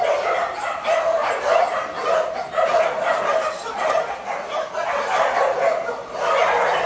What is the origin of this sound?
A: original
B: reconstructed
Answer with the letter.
A